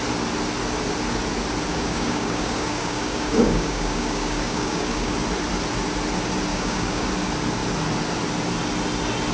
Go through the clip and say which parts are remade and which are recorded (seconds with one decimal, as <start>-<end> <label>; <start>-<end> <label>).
0.0-1.7 recorded; 1.7-5.1 remade; 5.1-6.5 recorded; 6.5-7.1 remade; 7.1-9.3 recorded